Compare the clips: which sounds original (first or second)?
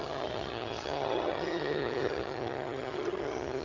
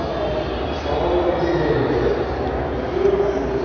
second